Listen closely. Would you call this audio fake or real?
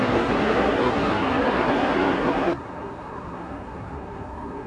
fake